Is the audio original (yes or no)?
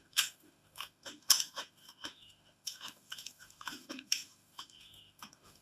no